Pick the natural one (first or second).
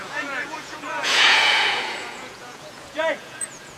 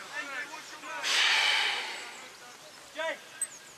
second